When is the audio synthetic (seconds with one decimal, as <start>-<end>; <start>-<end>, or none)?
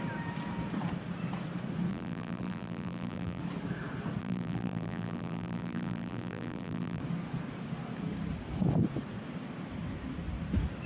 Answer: 1.9-3.4; 4.2-7.0